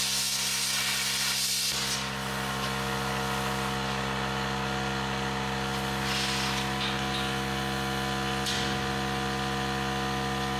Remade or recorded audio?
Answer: recorded